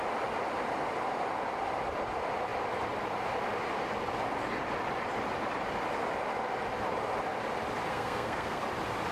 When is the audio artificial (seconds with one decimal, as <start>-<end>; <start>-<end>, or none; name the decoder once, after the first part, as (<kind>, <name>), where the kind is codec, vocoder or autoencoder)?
7.9-8.6 (codec, SNAC)